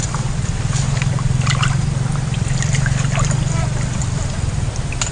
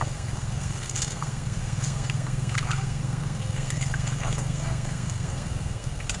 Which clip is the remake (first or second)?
second